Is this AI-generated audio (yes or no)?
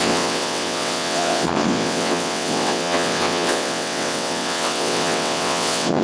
yes